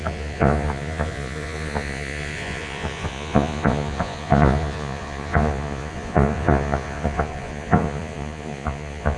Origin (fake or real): fake